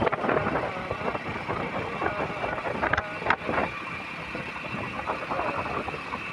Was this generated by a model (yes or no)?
no